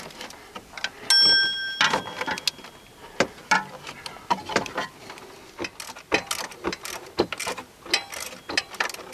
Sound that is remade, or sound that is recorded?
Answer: recorded